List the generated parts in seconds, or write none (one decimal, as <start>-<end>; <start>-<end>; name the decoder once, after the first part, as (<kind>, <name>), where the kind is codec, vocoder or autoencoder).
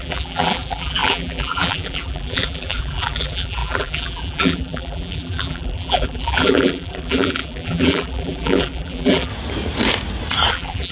0.0-9.3 (vocoder, BigVGAN v2); 10.5-10.9